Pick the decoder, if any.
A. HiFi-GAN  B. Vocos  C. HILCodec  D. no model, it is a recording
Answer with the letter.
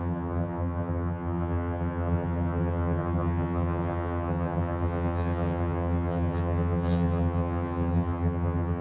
A